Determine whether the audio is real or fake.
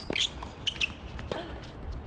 real